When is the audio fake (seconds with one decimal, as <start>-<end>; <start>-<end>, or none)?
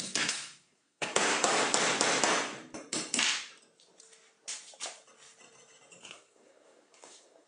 0.0-1.5; 6.0-7.5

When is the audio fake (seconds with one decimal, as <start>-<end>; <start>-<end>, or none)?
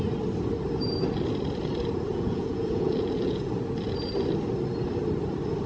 2.1-3.5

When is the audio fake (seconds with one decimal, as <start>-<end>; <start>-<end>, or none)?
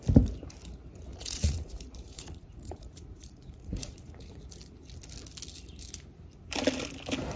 1.1-4.4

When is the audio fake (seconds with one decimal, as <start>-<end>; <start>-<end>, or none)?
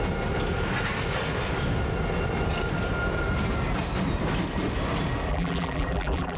5.3-6.4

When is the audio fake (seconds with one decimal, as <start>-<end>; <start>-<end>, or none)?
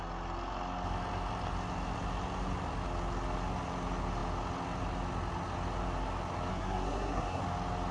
6.5-7.4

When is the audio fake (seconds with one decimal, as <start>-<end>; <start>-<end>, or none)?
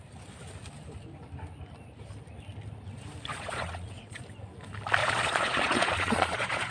3.3-4.2; 5.0-6.7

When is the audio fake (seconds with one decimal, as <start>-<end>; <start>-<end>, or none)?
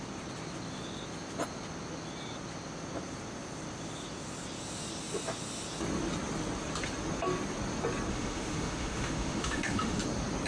8.1-10.0